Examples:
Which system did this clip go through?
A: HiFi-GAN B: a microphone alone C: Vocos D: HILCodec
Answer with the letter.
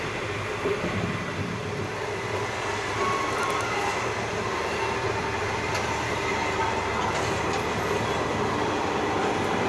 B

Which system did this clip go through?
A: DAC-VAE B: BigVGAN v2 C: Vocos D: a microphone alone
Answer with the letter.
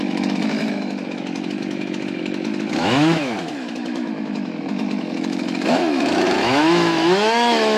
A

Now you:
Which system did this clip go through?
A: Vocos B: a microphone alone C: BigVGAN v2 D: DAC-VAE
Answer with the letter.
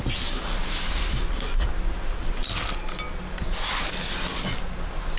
B